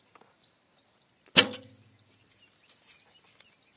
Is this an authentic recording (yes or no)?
yes